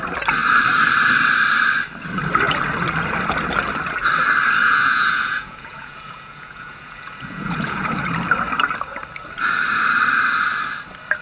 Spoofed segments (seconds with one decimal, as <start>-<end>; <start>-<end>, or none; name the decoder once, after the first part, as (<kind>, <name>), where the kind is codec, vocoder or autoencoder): 4.6-7.8 (vocoder, Vocos)